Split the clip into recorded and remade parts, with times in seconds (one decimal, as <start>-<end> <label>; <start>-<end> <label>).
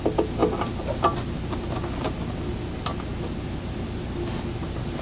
0.0-5.0 recorded